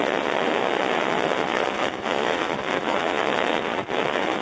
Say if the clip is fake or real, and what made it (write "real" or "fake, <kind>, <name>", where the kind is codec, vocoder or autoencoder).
fake, vocoder, Vocos